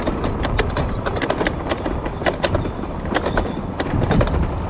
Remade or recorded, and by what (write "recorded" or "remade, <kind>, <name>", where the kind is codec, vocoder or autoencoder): recorded